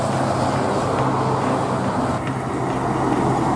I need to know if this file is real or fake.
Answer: real